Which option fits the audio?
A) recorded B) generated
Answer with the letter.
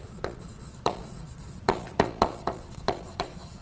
B